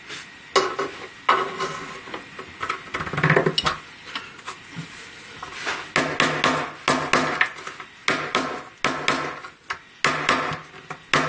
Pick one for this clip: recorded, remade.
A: recorded